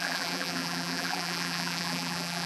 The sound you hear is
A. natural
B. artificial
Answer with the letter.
B